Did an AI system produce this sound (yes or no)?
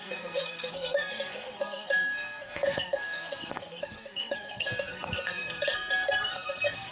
yes